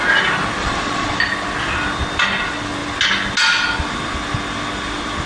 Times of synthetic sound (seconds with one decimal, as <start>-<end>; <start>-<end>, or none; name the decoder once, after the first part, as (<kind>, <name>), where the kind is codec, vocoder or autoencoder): 0.6-1.2 (vocoder, Vocos)